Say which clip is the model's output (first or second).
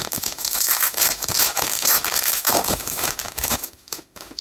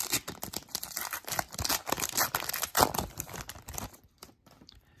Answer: first